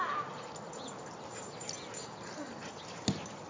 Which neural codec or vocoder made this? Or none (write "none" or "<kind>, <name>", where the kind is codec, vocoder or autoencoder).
none